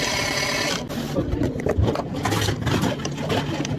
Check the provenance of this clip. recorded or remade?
recorded